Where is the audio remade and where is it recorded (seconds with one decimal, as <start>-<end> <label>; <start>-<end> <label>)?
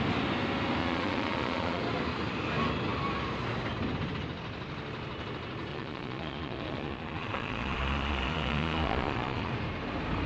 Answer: 0.0-0.8 recorded; 0.8-1.8 remade; 1.8-5.7 recorded; 5.7-9.5 remade; 9.5-10.3 recorded